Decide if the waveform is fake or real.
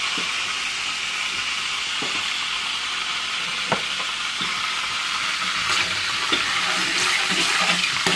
real